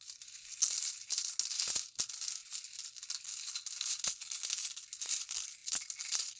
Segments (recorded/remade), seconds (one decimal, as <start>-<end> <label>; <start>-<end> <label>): 0.0-6.4 recorded